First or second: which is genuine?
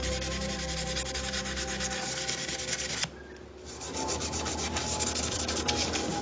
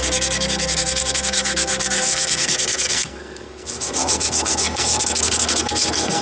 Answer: first